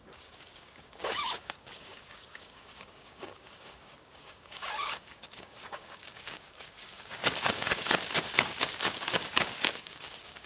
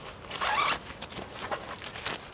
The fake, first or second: first